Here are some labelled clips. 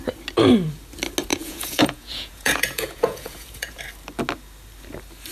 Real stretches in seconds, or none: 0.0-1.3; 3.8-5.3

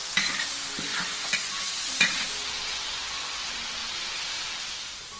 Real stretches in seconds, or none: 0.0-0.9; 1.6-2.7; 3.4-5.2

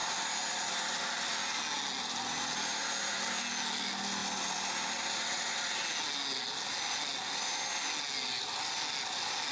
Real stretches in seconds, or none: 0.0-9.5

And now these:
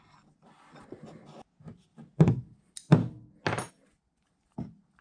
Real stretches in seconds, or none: 0.0-5.0